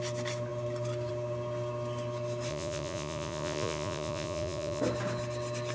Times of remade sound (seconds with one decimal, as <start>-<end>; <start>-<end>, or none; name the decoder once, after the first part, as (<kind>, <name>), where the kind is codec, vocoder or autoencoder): 2.5-4.8 (vocoder, Vocos)